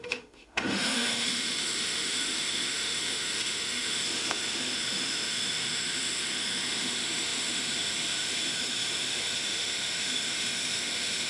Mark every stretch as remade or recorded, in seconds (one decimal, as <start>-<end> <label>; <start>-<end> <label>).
0.0-11.3 remade

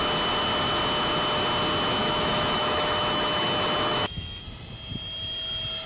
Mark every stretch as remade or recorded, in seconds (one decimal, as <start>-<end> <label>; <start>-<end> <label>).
0.0-2.0 recorded; 2.0-4.4 remade; 4.4-5.9 recorded